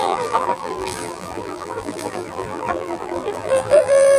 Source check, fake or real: fake